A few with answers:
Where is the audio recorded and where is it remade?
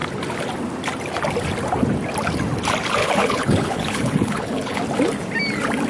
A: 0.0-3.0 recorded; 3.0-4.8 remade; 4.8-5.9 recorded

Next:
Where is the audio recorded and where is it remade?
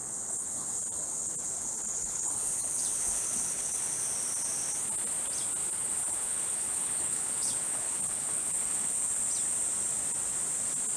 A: 0.0-4.0 remade; 4.0-5.6 recorded; 5.6-8.9 remade; 8.9-11.0 recorded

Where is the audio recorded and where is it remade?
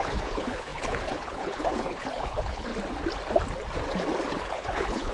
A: 0.0-2.7 remade; 2.7-4.3 recorded; 4.3-5.1 remade